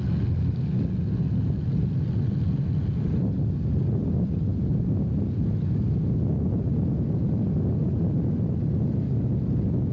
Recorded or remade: recorded